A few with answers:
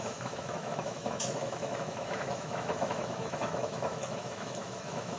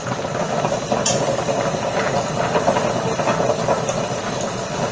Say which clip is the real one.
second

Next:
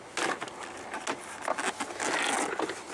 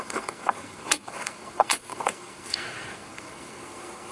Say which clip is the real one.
first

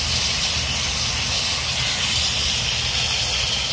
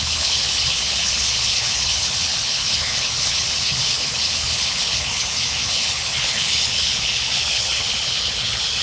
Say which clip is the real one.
first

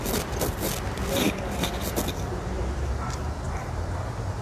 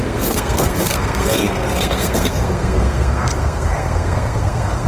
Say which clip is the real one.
first